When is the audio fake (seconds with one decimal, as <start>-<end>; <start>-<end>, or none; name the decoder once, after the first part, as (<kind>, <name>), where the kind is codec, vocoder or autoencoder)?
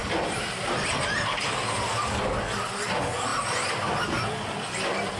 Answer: none